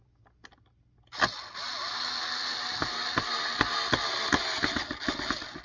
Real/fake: real